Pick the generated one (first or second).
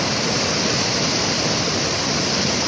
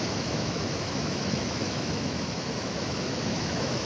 second